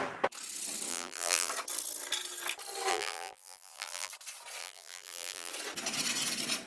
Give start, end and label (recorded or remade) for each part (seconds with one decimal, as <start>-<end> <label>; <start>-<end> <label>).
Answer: 0.0-0.9 recorded; 0.9-1.5 remade; 1.5-2.9 recorded; 2.9-4.1 remade; 4.1-4.6 recorded; 4.6-5.5 remade; 5.5-6.7 recorded